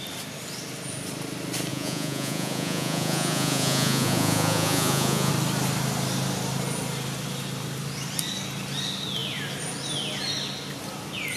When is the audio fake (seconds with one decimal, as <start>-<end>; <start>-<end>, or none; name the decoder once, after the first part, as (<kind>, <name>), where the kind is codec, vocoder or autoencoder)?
1.7-5.3 (vocoder, Vocos)